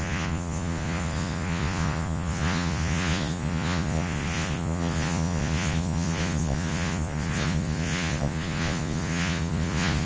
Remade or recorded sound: remade